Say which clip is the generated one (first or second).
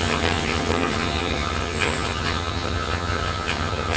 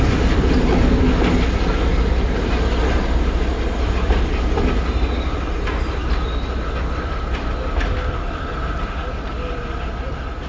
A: first